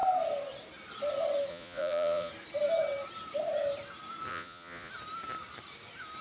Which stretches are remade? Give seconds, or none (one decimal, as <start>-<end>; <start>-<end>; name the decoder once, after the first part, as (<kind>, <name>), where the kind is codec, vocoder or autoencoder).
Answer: 1.5-2.3 (vocoder, Vocos); 4.3-4.9